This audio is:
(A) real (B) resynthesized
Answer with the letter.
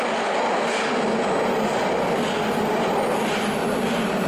A